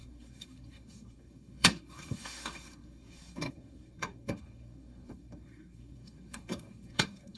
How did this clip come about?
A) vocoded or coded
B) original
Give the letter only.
A